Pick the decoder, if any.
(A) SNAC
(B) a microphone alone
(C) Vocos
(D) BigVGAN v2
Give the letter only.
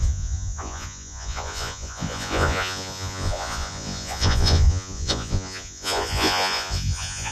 C